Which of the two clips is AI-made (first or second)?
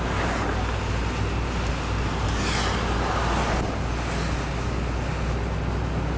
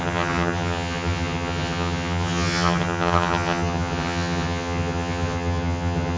second